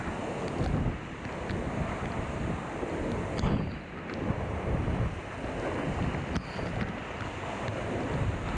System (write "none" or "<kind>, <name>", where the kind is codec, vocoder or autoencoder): none